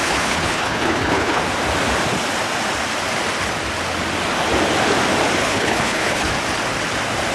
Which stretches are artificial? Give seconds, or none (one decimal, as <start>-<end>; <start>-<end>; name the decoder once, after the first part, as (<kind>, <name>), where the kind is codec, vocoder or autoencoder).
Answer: 0.0-1.4 (codec, HILCodec); 5.4-6.3